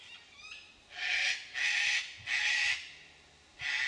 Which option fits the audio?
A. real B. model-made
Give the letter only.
A